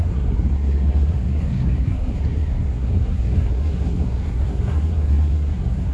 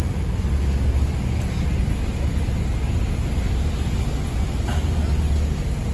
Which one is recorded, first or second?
second